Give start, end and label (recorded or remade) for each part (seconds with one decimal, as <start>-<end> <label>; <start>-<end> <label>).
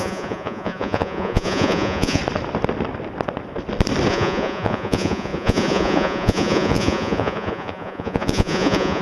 0.0-2.2 remade; 2.2-4.1 recorded; 4.1-9.0 remade